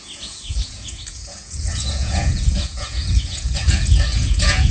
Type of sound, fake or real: fake